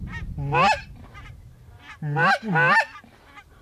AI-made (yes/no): no